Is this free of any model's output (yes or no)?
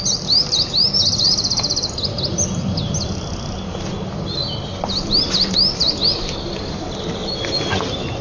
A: yes